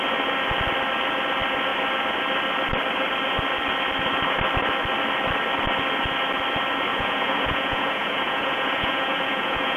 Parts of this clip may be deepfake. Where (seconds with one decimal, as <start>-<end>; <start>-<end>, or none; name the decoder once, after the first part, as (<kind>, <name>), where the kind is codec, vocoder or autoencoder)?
6.9-9.8 (vocoder, Vocos)